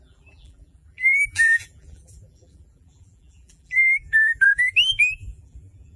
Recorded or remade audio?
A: remade